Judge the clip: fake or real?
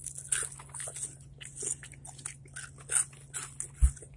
real